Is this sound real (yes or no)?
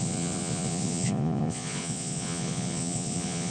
no